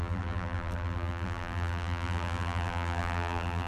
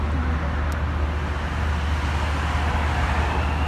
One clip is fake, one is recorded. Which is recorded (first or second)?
second